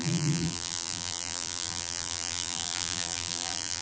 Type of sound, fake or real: fake